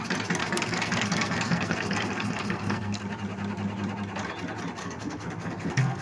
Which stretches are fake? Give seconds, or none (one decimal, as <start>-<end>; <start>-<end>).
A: 0.4-3.0; 4.8-6.0